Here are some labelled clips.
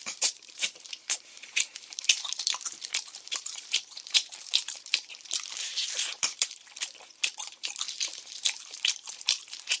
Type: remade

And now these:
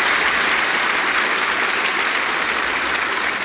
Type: recorded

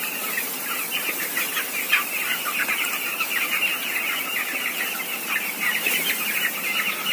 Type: recorded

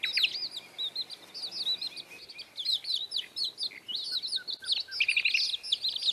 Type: recorded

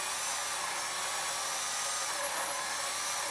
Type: recorded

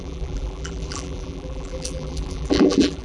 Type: remade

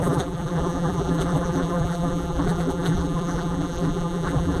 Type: remade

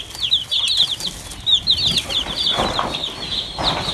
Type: recorded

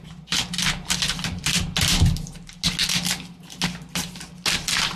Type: recorded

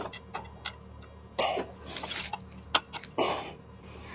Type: recorded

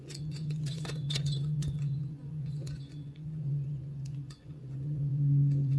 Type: remade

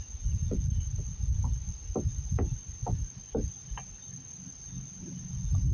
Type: recorded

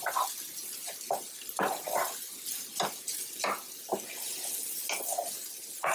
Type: recorded